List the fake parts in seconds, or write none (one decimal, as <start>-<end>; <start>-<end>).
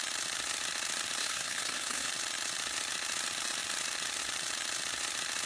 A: 1.2-2.1